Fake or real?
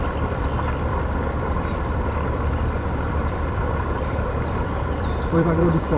fake